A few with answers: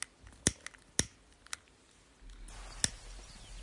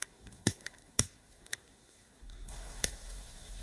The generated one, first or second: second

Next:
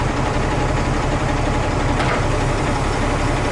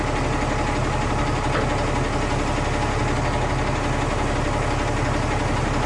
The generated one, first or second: first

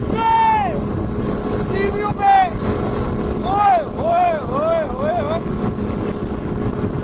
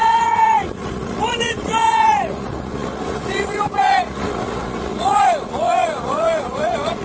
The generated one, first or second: second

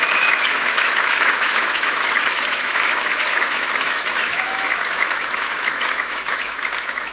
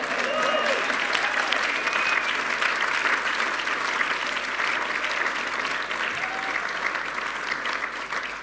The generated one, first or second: first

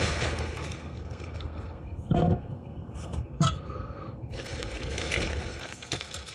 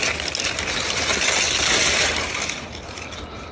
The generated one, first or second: first